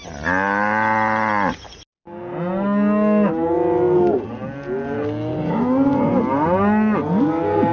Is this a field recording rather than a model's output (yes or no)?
yes